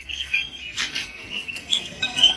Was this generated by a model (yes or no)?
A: yes